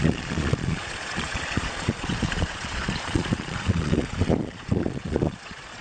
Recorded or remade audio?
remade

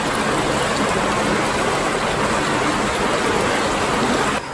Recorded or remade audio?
recorded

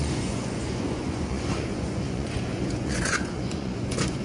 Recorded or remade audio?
remade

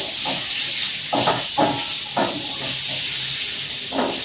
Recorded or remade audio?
recorded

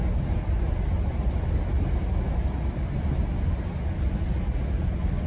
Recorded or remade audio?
recorded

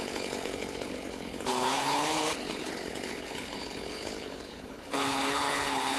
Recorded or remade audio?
remade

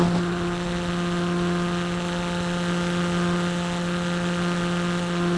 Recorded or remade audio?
recorded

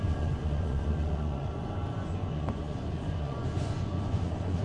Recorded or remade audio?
remade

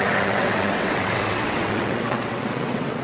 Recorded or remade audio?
remade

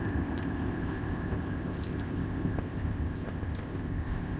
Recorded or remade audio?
remade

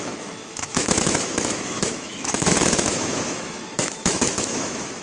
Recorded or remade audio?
remade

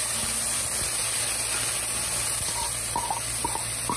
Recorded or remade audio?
recorded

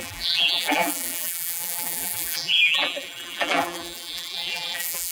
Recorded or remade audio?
remade